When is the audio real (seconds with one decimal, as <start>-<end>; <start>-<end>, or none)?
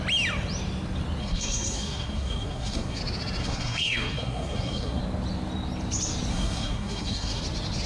0.0-1.2; 3.0-3.4; 5.0-6.3; 7.4-7.9